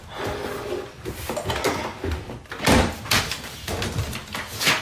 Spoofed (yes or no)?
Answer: no